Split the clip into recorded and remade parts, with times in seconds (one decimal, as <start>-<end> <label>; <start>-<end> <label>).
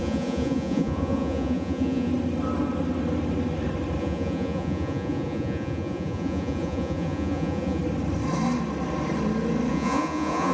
0.0-2.1 remade; 2.1-4.0 recorded; 4.0-7.8 remade; 7.8-9.7 recorded; 9.7-10.5 remade